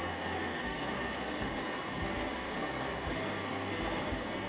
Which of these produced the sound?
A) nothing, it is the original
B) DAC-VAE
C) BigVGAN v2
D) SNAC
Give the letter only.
D